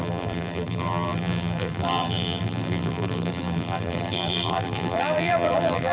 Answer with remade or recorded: remade